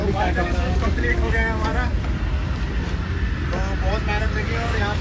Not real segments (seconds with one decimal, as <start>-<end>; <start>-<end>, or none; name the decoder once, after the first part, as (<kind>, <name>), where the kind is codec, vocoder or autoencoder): 0.0-1.7 (codec, DAC); 4.2-5.0